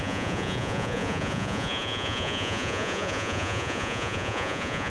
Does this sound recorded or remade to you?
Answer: remade